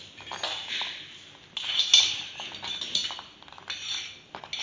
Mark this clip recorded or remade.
recorded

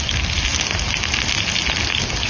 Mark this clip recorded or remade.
recorded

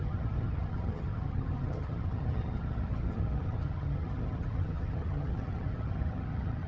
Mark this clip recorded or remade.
remade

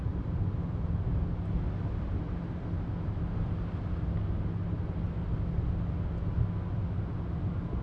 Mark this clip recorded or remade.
recorded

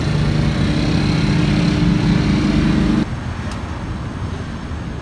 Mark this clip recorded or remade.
recorded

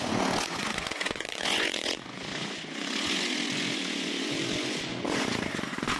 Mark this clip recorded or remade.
remade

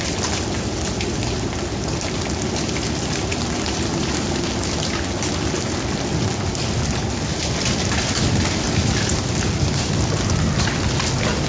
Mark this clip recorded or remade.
recorded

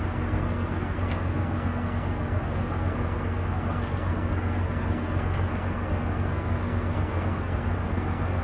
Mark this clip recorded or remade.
remade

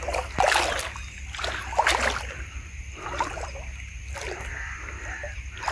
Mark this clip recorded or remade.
recorded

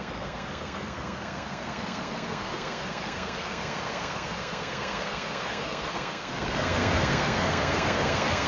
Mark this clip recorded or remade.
remade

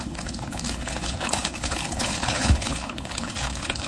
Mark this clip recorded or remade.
remade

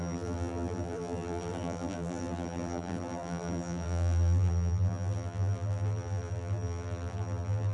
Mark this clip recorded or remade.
remade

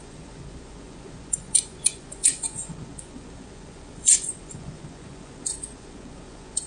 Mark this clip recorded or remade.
remade